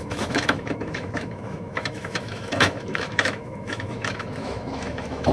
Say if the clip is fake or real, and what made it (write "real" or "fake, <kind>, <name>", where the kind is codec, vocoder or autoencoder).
fake, autoencoder, DAC-VAE